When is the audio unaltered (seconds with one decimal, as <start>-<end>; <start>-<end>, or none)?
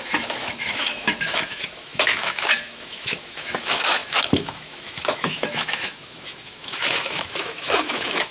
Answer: none